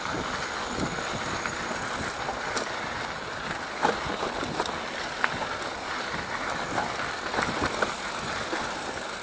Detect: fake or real real